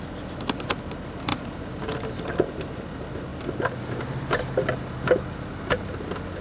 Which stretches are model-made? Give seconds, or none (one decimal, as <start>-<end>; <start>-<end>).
3.3-5.2